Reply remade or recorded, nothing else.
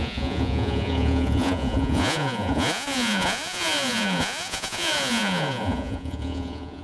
remade